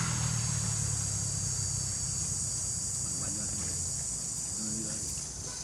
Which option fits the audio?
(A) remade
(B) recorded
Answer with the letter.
B